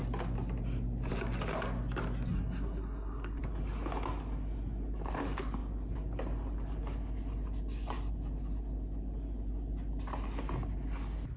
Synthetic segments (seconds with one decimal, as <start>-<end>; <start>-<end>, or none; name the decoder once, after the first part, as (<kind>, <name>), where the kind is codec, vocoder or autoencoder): 2.3-3.4 (codec, SNAC)